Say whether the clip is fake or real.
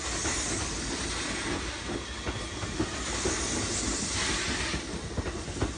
real